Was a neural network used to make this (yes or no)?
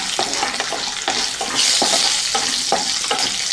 no